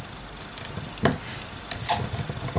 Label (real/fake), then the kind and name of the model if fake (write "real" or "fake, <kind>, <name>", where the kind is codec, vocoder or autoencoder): real